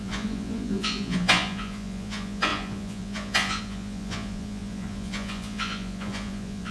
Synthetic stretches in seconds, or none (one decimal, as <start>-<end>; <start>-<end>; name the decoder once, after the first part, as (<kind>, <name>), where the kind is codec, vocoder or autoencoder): 0.0-6.7 (vocoder, Vocos)